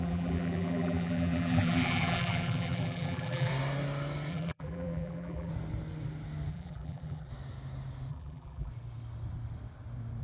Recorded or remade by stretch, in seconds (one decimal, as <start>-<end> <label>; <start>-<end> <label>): 0.0-3.5 remade; 3.5-4.3 recorded; 4.3-5.5 remade; 5.5-6.5 recorded; 6.5-7.3 remade; 7.3-8.1 recorded; 8.1-8.7 remade; 8.7-10.2 recorded